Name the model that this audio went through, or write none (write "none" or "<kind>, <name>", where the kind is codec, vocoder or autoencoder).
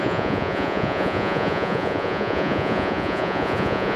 vocoder, Vocos